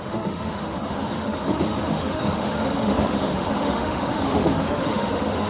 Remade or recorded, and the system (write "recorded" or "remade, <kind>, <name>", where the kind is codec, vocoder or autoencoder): remade, autoencoder, DAC-VAE